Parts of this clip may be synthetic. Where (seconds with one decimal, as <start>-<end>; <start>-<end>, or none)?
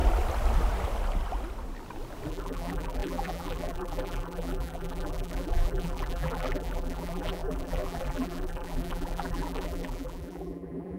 2.3-11.0